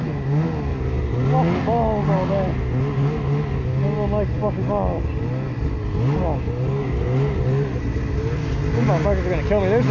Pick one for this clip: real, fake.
real